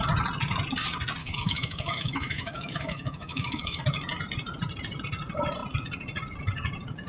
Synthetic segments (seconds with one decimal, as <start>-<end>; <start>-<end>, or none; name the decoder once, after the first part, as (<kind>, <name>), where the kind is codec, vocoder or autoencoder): 1.2-3.8 (autoencoder, DAC-VAE)